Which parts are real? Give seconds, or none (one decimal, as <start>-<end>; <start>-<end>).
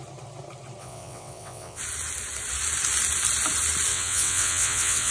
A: 0.0-0.8; 1.8-3.9